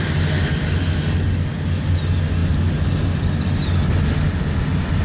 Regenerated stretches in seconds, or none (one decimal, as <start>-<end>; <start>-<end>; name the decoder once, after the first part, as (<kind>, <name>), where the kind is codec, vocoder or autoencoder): none